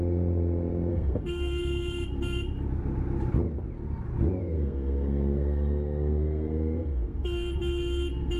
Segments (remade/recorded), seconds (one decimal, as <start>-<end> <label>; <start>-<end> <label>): 0.0-0.9 recorded; 0.9-1.6 remade; 1.6-4.4 recorded; 4.4-8.4 remade

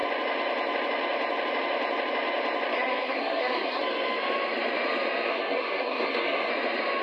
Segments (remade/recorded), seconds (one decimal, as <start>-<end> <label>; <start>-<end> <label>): 0.0-2.7 recorded; 2.7-3.8 remade; 3.8-5.3 recorded; 5.3-6.5 remade; 6.5-7.0 recorded

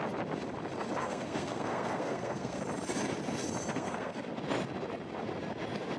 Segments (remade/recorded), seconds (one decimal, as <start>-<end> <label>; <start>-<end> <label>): 0.0-1.0 recorded; 1.0-2.6 remade; 2.6-3.7 recorded; 3.7-4.2 remade; 4.2-6.0 recorded